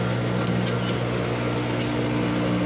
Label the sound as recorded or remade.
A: recorded